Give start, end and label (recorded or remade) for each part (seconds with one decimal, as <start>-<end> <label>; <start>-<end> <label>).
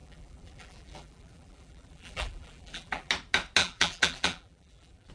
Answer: 0.0-3.1 remade; 3.1-3.6 recorded; 3.6-5.1 remade